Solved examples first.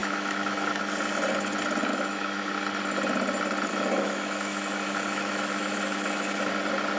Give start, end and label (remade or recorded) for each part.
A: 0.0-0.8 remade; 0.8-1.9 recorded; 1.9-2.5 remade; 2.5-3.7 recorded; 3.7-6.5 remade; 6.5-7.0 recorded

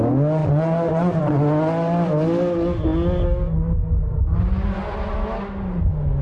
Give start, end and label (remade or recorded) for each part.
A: 0.0-0.4 recorded; 0.4-1.2 remade; 1.2-6.2 recorded

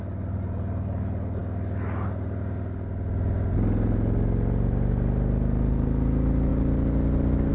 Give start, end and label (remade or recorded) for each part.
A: 0.0-7.5 recorded

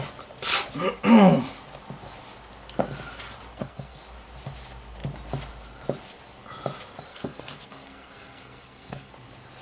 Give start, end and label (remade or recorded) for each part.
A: 0.0-3.5 recorded; 3.5-4.0 remade; 4.0-7.1 recorded; 7.1-9.1 remade; 9.1-9.6 recorded

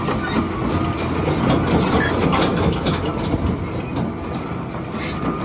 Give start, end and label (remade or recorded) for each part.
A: 0.0-5.4 recorded

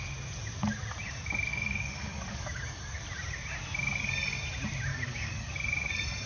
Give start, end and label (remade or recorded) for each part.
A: 0.0-1.5 recorded; 1.5-3.0 remade; 3.0-4.9 recorded; 4.9-5.5 remade; 5.5-6.3 recorded

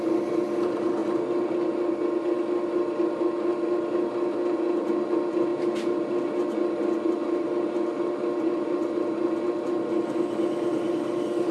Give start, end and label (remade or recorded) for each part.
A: 0.0-11.5 recorded